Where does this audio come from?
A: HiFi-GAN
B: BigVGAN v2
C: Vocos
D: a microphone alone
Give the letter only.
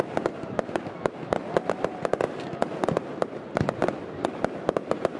B